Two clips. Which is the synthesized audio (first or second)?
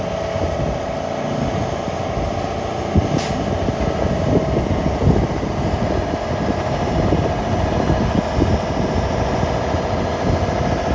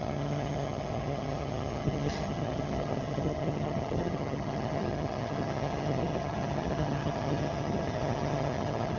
second